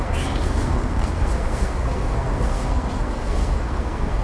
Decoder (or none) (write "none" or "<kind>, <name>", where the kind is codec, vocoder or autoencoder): codec, SNAC